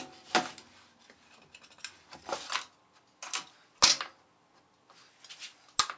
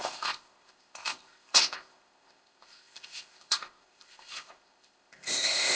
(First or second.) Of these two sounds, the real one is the first